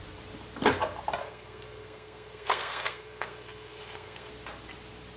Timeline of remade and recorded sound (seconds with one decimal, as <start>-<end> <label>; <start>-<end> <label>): 0.0-1.2 recorded; 1.2-4.3 remade; 4.3-5.2 recorded